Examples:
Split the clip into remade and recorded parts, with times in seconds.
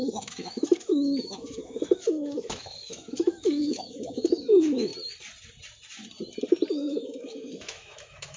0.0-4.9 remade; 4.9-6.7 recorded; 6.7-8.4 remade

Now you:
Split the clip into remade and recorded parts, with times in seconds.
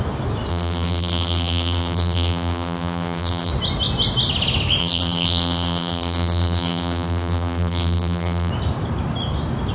0.0-0.5 recorded; 0.5-3.5 remade; 3.5-4.8 recorded; 4.8-8.5 remade; 8.5-9.7 recorded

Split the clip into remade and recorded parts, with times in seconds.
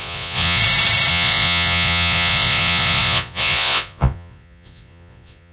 0.0-0.6 remade; 0.6-1.1 recorded; 1.1-5.5 remade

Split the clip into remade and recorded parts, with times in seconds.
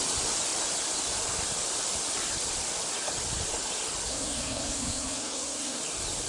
0.0-4.1 recorded; 4.1-5.8 remade; 5.8-6.3 recorded